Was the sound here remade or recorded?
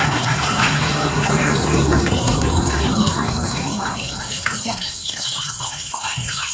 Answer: remade